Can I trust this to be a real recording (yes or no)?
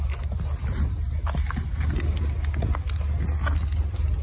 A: yes